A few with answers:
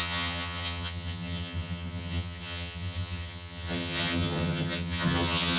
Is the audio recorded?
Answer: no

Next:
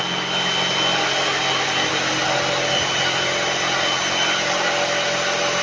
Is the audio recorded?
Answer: yes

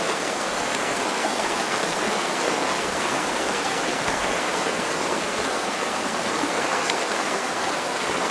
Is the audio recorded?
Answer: no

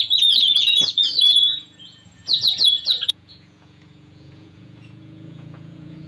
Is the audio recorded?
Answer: no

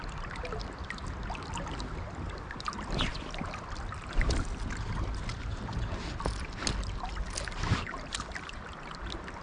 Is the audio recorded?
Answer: yes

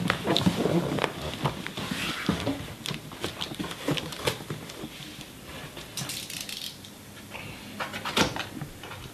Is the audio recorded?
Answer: yes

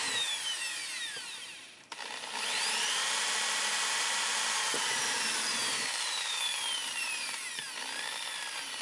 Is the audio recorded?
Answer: no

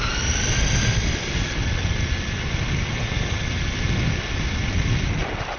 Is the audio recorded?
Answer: yes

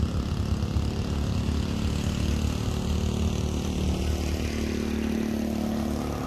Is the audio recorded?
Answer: yes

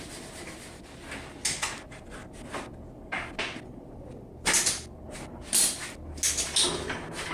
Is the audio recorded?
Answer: yes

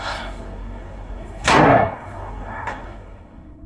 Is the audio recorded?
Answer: no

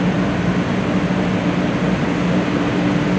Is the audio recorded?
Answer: yes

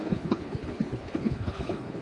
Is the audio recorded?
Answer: no